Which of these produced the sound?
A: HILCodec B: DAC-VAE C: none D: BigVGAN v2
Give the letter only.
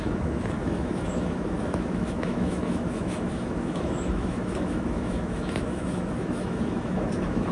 B